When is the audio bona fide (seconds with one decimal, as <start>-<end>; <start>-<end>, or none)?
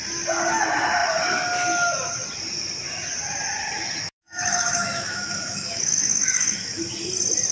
0.0-4.0; 6.8-7.5